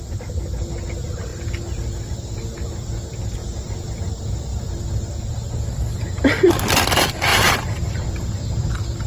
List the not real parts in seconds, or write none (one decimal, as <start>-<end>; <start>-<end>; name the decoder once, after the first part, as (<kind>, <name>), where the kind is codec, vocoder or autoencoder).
3.4-4.1 (vocoder, BigVGAN v2); 4.5-5.2; 7.3-8.6